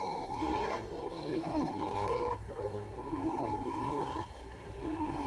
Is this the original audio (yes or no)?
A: no